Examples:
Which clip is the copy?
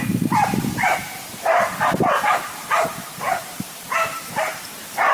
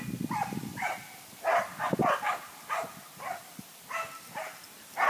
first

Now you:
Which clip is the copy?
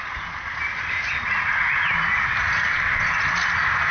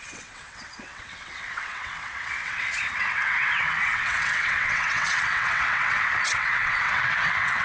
second